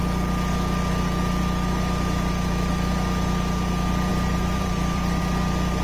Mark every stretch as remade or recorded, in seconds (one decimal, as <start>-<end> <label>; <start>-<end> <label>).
0.0-4.1 recorded; 4.1-5.2 remade; 5.2-5.8 recorded